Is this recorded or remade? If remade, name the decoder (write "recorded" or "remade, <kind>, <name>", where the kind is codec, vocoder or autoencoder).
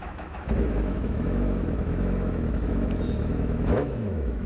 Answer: remade, autoencoder, DAC-VAE